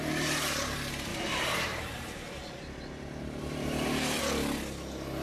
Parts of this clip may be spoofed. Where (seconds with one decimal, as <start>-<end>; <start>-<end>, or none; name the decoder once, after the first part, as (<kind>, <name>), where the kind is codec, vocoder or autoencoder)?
1.1-4.2 (vocoder, BigVGAN v2)